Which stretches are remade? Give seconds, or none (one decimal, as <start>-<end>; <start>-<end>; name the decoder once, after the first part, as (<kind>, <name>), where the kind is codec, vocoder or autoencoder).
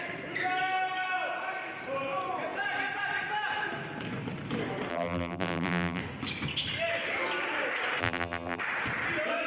4.9-6.0 (vocoder, BigVGAN v2); 8.0-8.6